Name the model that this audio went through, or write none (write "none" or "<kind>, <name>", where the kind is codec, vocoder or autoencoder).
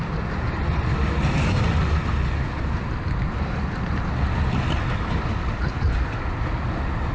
none